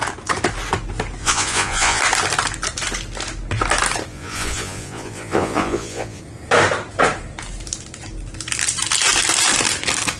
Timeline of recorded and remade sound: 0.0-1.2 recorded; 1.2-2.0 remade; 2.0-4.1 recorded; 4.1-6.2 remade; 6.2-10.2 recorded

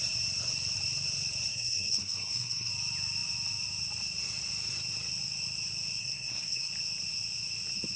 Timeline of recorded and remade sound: 0.0-1.5 recorded; 1.5-2.7 remade; 2.7-6.0 recorded; 6.0-6.7 remade; 6.7-8.0 recorded